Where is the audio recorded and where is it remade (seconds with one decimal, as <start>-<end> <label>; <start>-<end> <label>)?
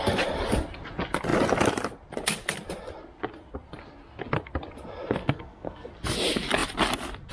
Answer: 0.0-5.2 recorded; 5.2-5.9 remade; 5.9-7.3 recorded